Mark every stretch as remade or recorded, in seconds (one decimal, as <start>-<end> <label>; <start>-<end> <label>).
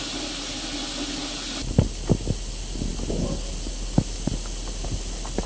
0.0-5.5 recorded